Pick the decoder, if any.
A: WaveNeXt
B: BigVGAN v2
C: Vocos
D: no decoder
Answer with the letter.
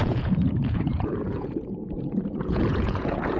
C